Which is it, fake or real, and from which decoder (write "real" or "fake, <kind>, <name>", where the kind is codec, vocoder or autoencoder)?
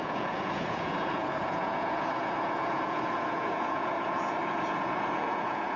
fake, vocoder, Vocos